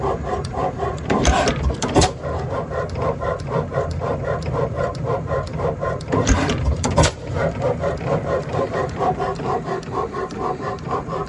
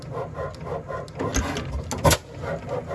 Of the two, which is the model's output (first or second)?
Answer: first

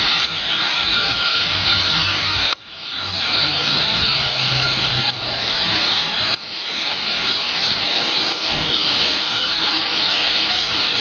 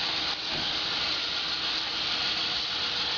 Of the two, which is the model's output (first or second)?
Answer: first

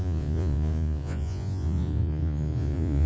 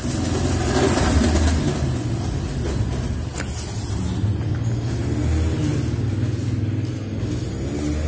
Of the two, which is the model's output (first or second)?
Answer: first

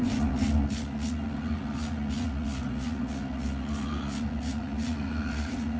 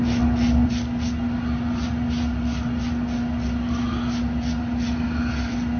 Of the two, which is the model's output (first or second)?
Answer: first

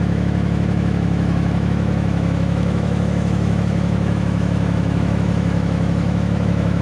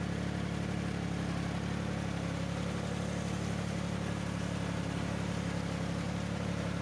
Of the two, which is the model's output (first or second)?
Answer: first